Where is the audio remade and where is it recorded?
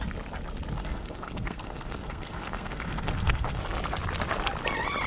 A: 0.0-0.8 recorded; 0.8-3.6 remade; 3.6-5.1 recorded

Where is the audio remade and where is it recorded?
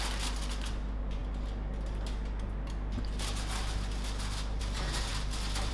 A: 0.0-5.7 recorded